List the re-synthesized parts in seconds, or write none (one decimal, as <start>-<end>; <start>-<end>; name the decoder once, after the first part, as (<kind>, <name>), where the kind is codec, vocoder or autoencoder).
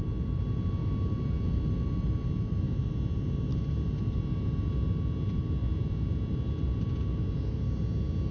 none